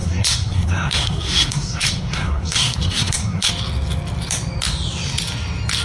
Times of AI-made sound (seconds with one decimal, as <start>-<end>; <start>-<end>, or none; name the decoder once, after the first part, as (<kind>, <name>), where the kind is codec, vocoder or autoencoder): 0.0-3.5 (codec, SNAC)